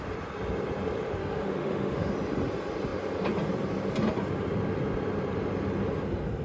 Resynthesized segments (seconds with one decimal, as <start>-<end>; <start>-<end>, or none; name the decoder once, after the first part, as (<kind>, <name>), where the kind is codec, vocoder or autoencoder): 1.2-2.1 (autoencoder, DAC-VAE)